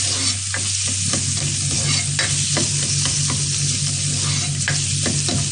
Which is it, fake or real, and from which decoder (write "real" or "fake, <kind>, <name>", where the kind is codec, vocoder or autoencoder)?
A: real